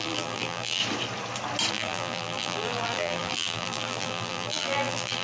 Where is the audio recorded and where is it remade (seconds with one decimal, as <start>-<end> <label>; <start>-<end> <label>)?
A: 0.0-0.8 remade; 0.8-1.7 recorded; 1.7-5.2 remade